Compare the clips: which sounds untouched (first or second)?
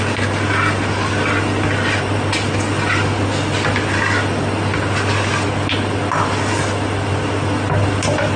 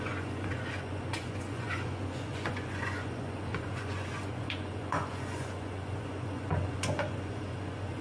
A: first